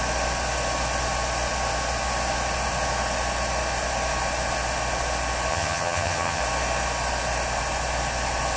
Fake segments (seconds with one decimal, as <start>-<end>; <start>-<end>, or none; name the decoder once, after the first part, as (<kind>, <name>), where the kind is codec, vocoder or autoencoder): 5.5-6.4 (vocoder, HiFi-GAN)